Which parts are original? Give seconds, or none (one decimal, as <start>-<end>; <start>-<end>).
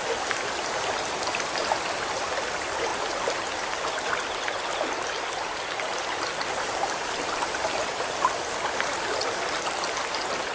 0.0-10.5